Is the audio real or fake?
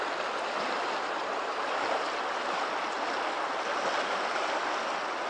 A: real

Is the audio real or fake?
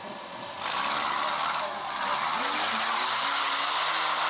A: real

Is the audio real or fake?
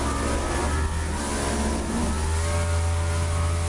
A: real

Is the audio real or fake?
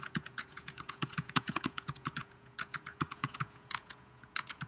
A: fake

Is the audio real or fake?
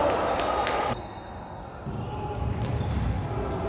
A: real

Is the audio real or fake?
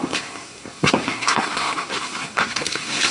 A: fake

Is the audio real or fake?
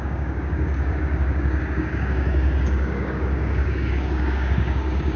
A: fake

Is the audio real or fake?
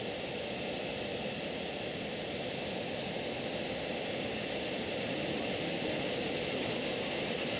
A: real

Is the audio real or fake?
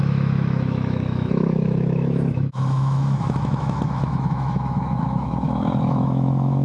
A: fake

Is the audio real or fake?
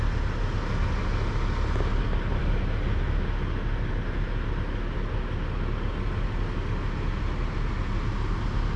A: real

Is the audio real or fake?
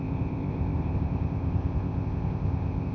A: fake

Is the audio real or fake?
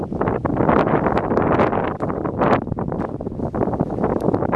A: real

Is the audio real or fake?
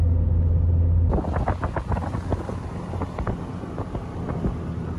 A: real